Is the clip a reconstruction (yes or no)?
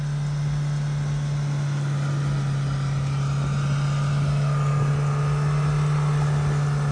no